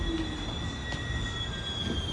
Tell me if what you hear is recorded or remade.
recorded